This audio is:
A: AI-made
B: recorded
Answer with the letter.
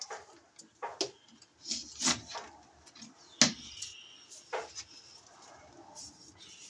B